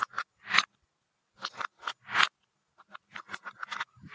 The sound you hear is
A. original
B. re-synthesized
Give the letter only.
A